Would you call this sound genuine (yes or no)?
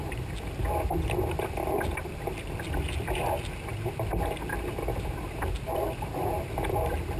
yes